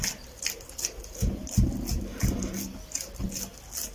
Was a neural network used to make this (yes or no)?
no